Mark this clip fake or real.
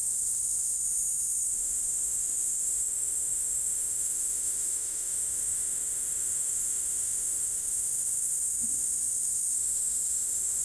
fake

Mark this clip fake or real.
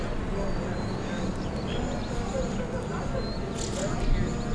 real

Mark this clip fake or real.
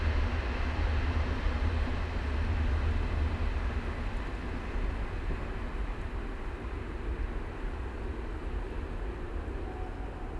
real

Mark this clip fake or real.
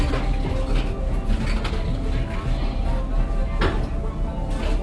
real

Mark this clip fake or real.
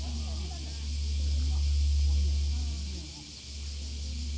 real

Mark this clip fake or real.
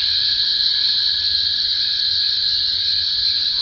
real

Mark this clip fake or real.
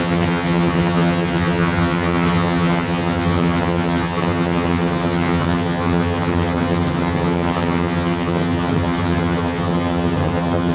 fake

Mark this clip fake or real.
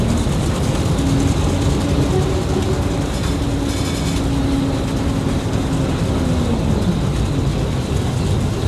real